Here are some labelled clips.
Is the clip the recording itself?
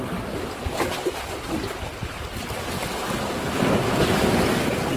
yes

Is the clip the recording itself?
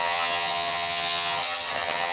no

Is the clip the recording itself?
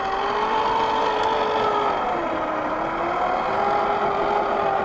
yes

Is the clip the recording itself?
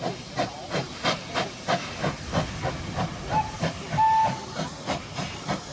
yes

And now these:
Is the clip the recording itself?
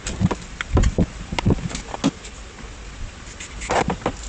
yes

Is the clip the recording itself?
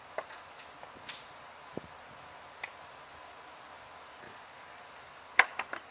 yes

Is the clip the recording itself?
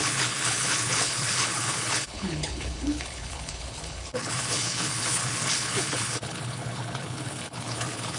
no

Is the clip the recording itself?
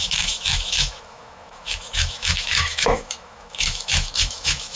no